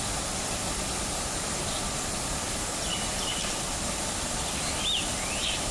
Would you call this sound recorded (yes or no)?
no